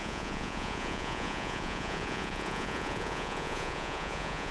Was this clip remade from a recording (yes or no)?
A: yes